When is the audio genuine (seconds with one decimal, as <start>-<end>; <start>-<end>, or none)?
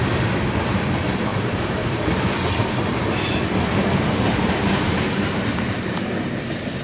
0.0-1.3; 5.4-6.8